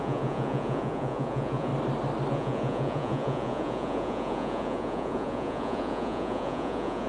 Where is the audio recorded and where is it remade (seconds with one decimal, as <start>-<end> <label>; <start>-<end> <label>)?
0.0-1.7 remade; 1.7-2.3 recorded; 2.3-7.1 remade

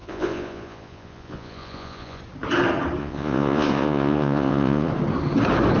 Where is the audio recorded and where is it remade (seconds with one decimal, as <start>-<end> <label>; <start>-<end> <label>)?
0.0-2.2 remade; 2.2-3.0 recorded; 3.0-4.9 remade; 4.9-5.8 recorded

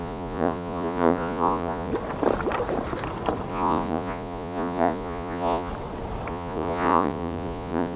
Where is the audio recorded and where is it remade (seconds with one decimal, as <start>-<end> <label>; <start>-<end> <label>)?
0.0-1.9 remade; 1.9-3.5 recorded; 3.5-5.7 remade; 5.7-6.3 recorded; 6.3-8.0 remade